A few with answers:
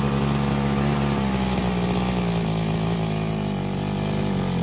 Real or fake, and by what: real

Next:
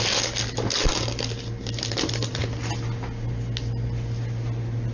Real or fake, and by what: real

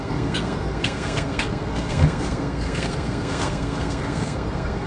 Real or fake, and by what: fake, codec, SNAC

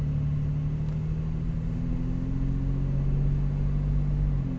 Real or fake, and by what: real